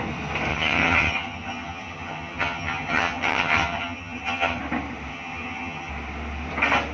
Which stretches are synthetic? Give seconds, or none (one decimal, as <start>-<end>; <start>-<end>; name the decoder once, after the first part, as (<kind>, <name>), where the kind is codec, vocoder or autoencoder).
0.5-4.6 (vocoder, HiFi-GAN); 5.1-5.9